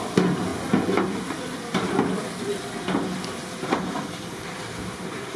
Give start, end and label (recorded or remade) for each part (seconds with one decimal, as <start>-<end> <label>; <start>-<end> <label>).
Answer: 0.0-5.4 recorded